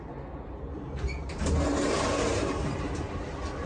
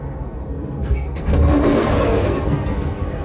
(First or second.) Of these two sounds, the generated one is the second